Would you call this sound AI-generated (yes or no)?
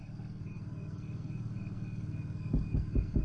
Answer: yes